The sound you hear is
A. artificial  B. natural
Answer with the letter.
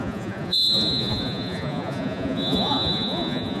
A